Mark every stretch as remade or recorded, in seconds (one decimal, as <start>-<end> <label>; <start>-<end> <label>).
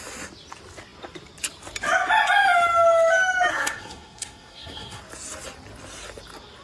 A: 0.0-3.5 recorded; 3.5-5.0 remade; 5.0-6.6 recorded